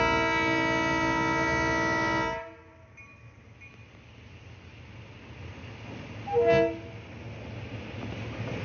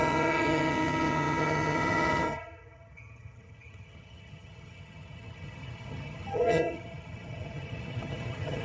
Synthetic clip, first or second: second